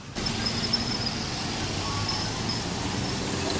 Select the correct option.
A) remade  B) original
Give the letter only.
B